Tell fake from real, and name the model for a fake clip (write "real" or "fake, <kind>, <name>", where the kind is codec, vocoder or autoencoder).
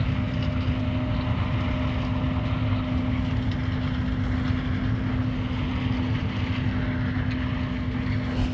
real